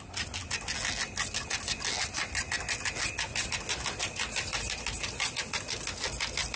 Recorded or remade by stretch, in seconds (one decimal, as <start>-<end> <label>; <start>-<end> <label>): 0.0-6.6 recorded

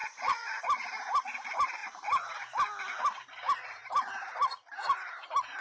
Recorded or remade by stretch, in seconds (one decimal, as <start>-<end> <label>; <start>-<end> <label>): 0.0-0.6 remade; 0.6-5.6 recorded

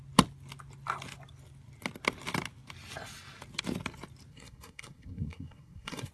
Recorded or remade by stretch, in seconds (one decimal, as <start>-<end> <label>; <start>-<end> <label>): 0.0-4.3 recorded; 4.3-6.1 remade